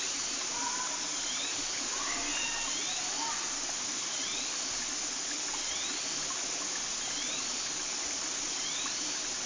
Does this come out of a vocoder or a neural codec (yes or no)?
no